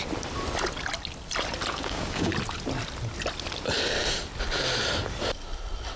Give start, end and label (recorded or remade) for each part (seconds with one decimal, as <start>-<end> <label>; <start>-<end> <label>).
0.0-1.7 recorded; 1.7-2.3 remade; 2.3-6.0 recorded